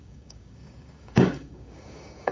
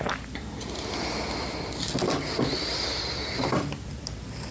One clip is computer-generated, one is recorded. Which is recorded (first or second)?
second